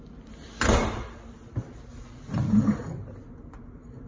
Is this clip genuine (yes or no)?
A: yes